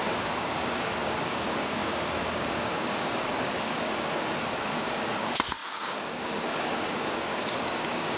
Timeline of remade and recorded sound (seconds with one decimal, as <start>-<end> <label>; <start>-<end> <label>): 0.0-8.2 remade

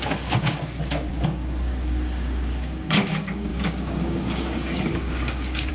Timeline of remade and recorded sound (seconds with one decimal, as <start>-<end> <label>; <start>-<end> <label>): 0.0-0.5 remade; 0.5-1.1 recorded; 1.1-5.7 remade

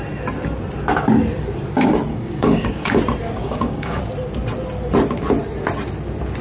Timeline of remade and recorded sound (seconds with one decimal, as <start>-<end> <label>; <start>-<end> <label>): 0.0-2.1 recorded; 2.1-3.0 remade; 3.0-3.4 recorded; 3.4-4.0 remade; 4.0-6.4 recorded

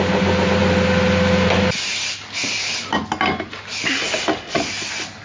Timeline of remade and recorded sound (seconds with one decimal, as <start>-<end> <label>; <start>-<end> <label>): 0.0-5.2 recorded